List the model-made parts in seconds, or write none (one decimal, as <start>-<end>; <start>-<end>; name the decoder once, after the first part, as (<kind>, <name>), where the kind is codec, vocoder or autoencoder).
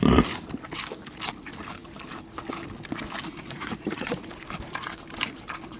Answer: 3.3-4.4 (vocoder, Vocos)